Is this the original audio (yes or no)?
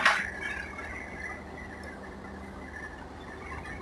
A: yes